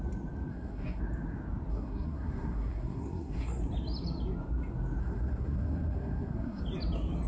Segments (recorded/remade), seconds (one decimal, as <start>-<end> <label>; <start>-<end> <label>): 0.0-0.5 recorded; 0.5-1.0 remade; 1.0-1.7 recorded; 1.7-3.6 remade; 3.6-5.0 recorded; 5.0-6.6 remade; 6.6-7.3 recorded